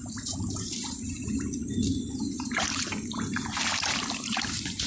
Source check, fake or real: fake